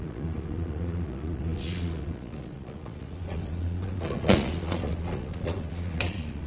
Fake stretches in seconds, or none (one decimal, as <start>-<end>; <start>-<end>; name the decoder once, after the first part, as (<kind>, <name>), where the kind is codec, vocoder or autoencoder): 0.0-6.5 (vocoder, Vocos)